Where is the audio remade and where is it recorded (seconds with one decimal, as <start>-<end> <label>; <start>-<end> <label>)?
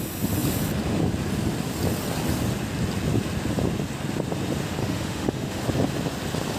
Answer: 0.0-4.8 recorded; 4.8-5.6 remade; 5.6-6.6 recorded